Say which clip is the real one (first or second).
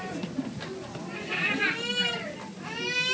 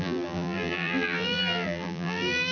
first